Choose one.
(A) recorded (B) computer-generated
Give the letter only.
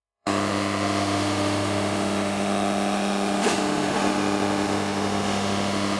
B